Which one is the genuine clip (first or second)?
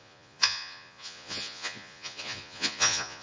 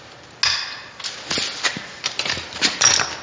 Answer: second